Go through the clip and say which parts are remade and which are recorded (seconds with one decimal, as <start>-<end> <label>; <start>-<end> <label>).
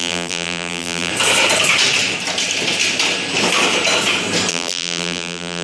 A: 0.0-1.1 remade; 1.1-4.5 recorded; 4.5-5.6 remade